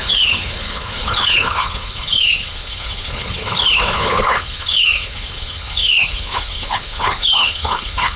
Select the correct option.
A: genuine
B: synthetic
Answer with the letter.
B